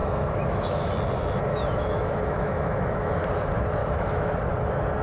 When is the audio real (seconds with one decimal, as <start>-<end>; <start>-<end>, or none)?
0.9-1.5; 3.2-3.8; 4.4-5.0